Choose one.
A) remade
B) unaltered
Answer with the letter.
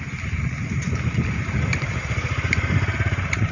A